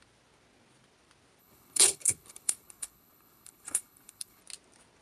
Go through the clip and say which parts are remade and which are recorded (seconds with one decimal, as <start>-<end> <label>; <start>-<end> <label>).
0.0-1.4 recorded; 1.4-4.4 remade; 4.4-5.0 recorded